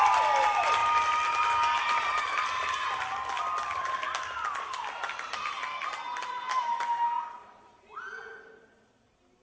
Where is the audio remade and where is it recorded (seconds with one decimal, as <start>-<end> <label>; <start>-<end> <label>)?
0.0-9.4 recorded